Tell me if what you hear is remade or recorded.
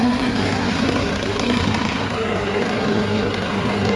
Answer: remade